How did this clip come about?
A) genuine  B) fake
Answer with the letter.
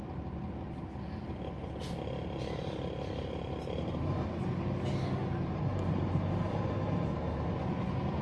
A